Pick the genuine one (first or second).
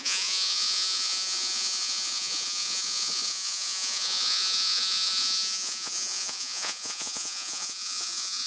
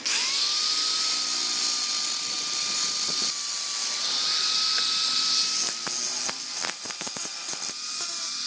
second